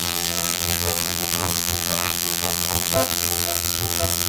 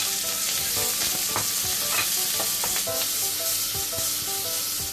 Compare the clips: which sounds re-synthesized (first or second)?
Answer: first